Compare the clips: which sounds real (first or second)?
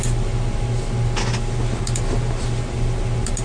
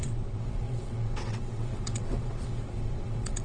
first